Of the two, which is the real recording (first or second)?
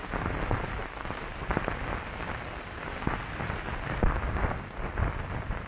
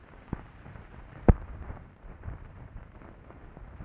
first